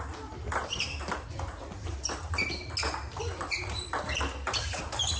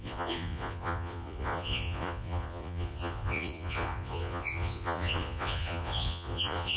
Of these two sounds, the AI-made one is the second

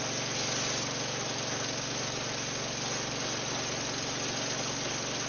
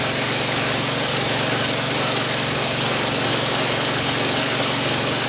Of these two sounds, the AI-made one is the second